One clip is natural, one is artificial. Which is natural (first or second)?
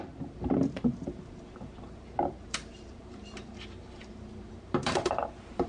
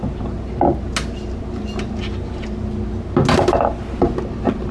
second